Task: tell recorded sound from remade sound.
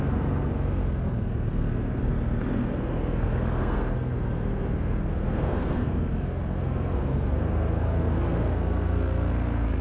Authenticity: remade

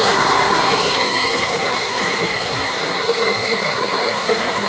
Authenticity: remade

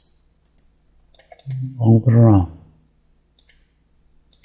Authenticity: recorded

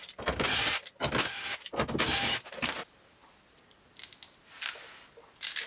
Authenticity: recorded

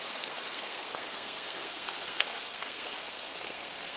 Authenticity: remade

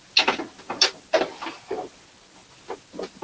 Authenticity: recorded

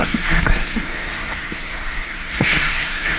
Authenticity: remade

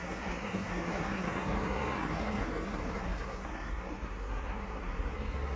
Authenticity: remade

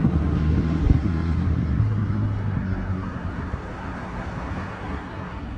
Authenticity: remade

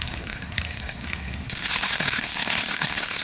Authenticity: remade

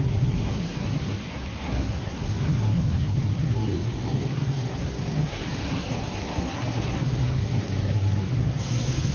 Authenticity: remade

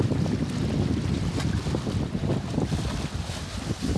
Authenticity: recorded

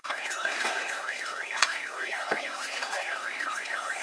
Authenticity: remade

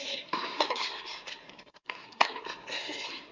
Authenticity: remade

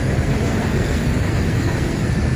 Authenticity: remade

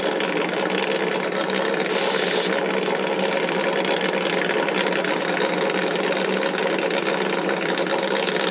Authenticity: recorded